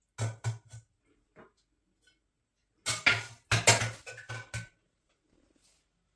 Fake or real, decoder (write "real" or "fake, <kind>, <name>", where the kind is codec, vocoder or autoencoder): real